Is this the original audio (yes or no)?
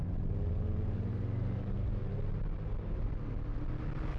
yes